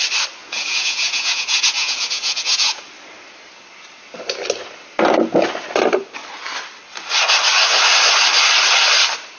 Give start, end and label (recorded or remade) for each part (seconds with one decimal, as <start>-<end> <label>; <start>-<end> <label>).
0.0-0.4 recorded; 0.4-2.8 remade; 2.8-9.4 recorded